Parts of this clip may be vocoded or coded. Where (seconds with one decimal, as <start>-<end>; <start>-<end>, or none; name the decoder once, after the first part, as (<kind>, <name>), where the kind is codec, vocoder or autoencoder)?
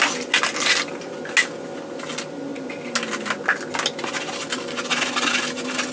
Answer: none